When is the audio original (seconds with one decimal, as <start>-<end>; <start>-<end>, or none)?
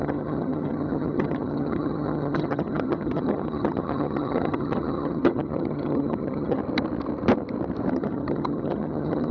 6.6-7.9